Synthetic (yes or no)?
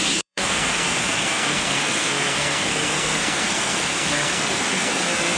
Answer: yes